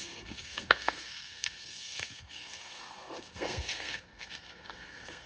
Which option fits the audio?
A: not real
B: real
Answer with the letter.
A